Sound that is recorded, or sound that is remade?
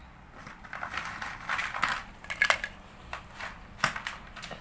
recorded